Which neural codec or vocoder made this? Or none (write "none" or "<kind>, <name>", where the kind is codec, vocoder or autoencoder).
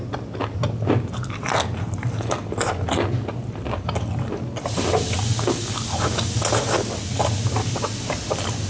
none